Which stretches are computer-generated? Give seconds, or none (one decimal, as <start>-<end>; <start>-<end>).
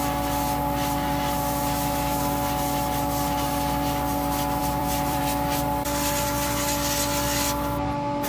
4.6-5.2